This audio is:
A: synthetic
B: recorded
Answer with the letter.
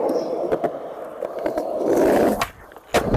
B